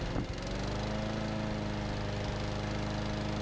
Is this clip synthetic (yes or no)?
no